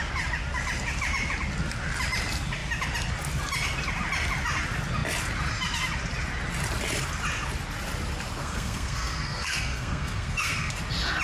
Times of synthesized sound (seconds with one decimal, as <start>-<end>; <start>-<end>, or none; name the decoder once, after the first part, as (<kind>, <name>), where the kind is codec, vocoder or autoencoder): 8.4-10.7 (codec, SNAC)

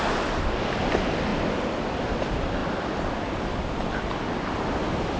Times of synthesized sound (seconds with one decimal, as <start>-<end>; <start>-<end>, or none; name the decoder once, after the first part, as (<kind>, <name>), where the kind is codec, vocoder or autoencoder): none

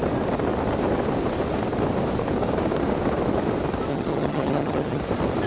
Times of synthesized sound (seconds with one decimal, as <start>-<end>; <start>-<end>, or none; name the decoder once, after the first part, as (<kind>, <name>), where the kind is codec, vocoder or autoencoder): 3.9-5.0 (vocoder, HiFi-GAN)